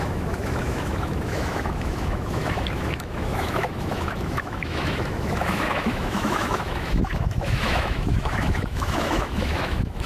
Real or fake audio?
fake